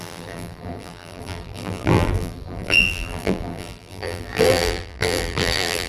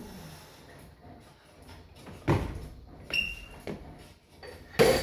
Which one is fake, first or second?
first